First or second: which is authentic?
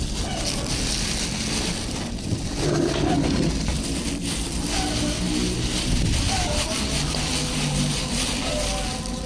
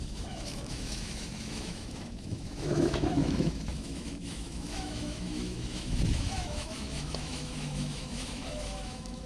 first